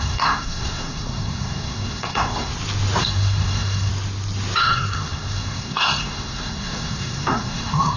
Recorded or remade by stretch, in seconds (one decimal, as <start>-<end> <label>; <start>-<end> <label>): 0.0-2.5 remade; 2.5-3.0 recorded; 3.0-3.9 remade; 3.9-4.6 recorded; 4.6-8.0 remade